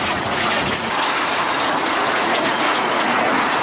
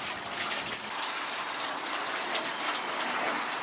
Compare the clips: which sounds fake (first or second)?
first